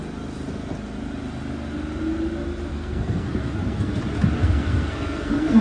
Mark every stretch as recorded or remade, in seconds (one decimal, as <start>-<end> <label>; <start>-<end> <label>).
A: 0.0-2.7 recorded; 2.7-3.9 remade; 3.9-4.4 recorded; 4.4-5.6 remade